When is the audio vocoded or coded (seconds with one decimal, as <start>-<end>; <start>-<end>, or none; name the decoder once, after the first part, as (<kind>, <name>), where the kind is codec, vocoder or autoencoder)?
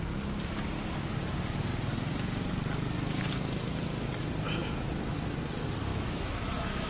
5.9-6.9 (autoencoder, DAC-VAE)